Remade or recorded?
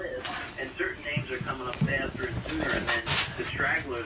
recorded